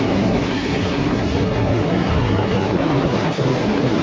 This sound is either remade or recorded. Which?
remade